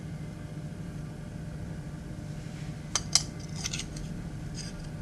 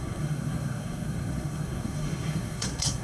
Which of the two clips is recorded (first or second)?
first